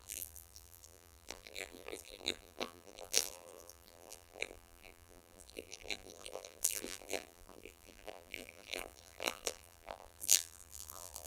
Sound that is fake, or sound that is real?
fake